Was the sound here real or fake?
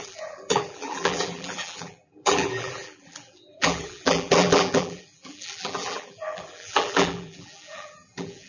fake